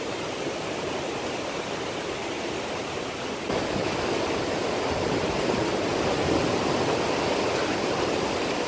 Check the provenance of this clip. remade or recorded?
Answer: recorded